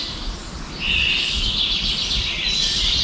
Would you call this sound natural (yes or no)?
yes